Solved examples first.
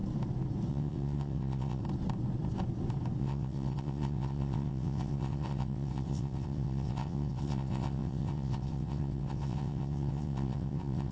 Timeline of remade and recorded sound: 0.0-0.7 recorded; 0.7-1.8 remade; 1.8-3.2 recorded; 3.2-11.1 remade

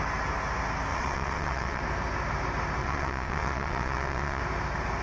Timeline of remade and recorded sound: 0.0-0.9 recorded; 0.9-1.8 remade; 1.8-2.8 recorded; 2.8-4.4 remade; 4.4-5.0 recorded

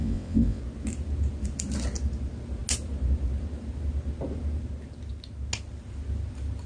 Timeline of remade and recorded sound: 0.0-0.6 remade; 0.6-6.7 recorded

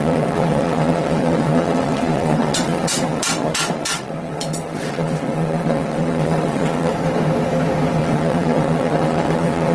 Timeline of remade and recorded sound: 0.0-6.9 remade; 6.9-8.0 recorded; 8.0-9.7 remade

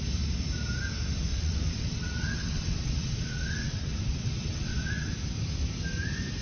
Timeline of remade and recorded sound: 0.0-1.3 recorded; 1.3-5.1 remade; 5.1-6.4 recorded

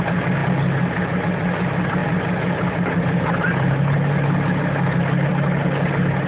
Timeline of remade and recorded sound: 0.0-6.3 recorded

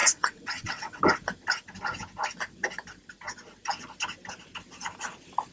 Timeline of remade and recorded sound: 0.0-1.0 remade; 1.0-5.5 recorded

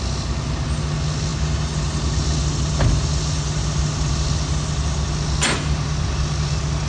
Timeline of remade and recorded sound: 0.0-6.9 recorded